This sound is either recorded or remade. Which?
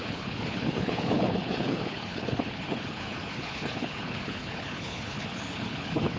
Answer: remade